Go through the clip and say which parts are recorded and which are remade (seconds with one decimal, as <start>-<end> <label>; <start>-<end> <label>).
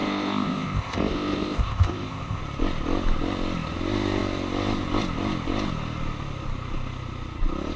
0.0-2.4 remade; 2.4-7.8 recorded